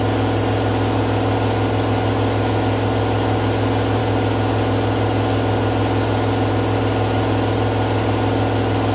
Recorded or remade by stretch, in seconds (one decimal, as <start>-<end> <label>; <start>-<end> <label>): 0.0-8.9 recorded